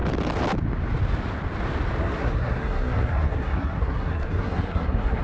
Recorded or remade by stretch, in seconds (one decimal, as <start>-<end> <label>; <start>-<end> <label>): 0.0-2.0 recorded; 2.0-5.2 remade